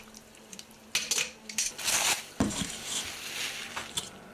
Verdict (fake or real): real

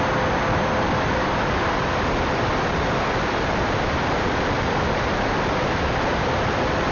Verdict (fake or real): real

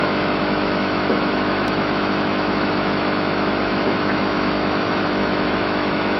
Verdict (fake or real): fake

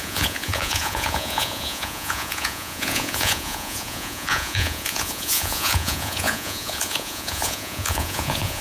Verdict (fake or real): fake